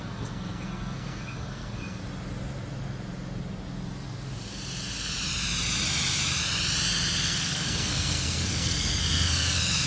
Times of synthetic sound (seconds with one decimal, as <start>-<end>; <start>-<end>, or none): 0.0-2.0; 7.2-9.9